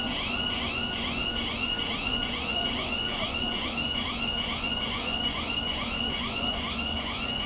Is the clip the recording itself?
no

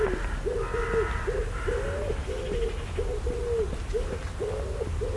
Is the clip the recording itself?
yes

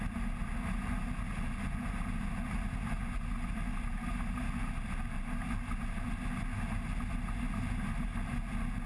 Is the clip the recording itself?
yes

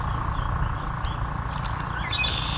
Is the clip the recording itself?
yes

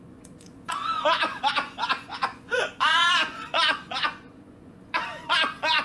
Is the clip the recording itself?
no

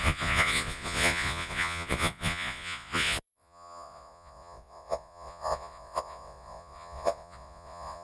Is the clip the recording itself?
no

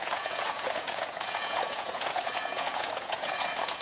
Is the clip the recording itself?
no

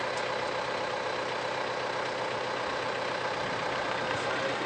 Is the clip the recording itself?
yes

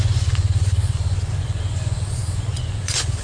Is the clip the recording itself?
no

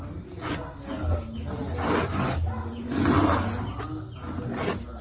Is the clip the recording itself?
yes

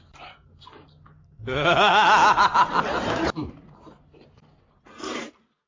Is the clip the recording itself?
yes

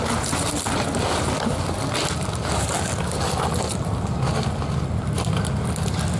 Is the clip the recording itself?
yes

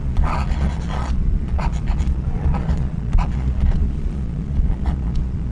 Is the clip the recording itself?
no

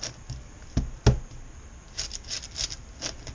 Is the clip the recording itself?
yes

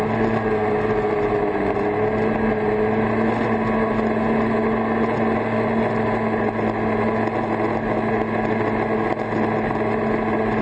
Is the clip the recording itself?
yes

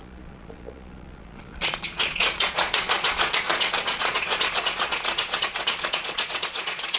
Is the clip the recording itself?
no